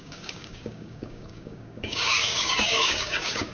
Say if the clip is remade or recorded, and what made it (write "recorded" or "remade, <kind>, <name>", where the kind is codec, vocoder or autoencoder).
remade, codec, DAC